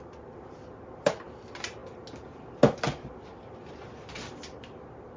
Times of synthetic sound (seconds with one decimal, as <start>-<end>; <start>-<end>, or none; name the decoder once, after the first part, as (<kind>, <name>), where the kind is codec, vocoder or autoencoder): none